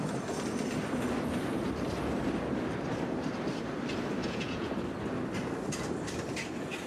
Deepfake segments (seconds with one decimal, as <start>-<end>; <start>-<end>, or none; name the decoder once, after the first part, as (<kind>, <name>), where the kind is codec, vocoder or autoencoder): 4.2-4.7 (vocoder, Vocos)